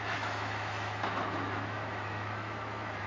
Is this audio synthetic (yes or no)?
yes